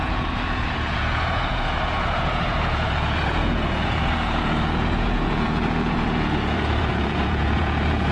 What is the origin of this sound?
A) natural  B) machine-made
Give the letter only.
B